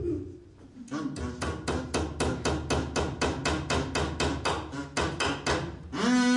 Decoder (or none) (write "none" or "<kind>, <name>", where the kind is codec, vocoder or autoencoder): none